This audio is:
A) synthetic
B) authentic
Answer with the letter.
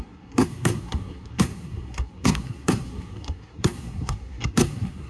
A